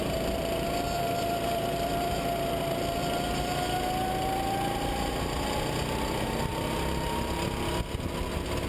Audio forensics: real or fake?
real